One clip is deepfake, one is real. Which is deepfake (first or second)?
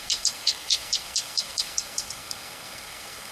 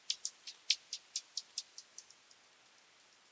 first